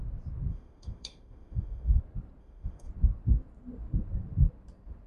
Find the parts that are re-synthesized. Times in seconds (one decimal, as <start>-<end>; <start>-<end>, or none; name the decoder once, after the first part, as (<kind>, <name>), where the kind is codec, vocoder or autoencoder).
0.5-2.0 (autoencoder, DAC-VAE); 2.4-2.9